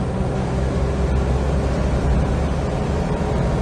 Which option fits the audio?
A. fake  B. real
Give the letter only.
B